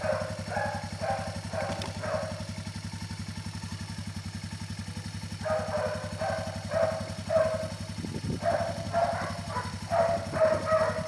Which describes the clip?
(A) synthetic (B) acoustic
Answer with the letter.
B